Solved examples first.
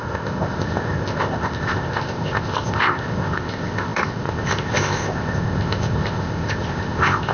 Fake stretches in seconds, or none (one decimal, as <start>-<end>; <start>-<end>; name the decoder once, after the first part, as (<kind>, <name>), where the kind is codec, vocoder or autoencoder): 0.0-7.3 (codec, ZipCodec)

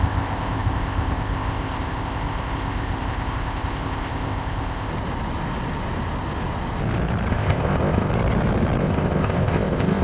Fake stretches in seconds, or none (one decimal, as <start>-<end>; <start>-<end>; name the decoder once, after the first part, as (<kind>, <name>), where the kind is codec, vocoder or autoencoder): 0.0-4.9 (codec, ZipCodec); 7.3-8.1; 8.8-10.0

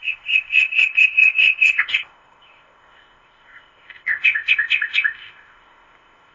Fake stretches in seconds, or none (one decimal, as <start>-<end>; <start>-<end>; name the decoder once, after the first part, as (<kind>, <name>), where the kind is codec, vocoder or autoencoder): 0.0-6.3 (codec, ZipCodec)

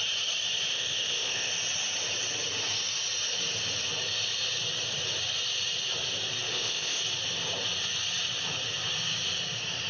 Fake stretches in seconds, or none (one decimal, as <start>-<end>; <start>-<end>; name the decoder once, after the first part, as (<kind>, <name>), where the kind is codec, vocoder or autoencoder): 0.7-1.5 (codec, ZipCodec); 6.5-7.0

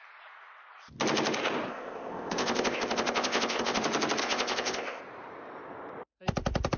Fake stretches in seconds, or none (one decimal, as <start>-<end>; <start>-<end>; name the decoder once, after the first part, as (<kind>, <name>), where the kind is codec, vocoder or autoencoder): 1.7-3.8 (codec, ZipCodec); 4.2-5.0

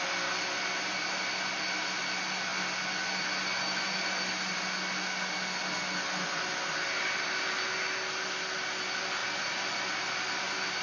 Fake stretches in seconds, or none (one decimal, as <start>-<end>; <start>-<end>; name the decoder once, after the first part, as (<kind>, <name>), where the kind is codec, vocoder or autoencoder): none

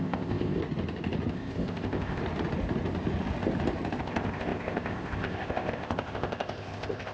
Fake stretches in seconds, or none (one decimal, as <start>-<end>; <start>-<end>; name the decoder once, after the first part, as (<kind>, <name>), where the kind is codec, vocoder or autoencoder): 0.0-0.6 (codec, ZipCodec); 1.3-2.2; 4.0-7.1